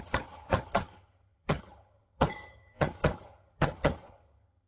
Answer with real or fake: fake